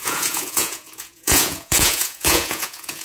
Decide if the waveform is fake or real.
fake